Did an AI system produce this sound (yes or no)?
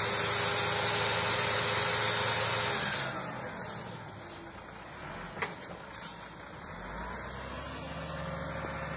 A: no